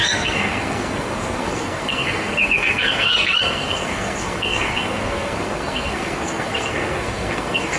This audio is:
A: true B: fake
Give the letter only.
B